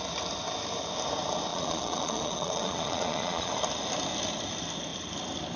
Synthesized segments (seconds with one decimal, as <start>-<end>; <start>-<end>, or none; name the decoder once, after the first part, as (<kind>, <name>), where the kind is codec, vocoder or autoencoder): 1.5-3.5 (vocoder, Vocos)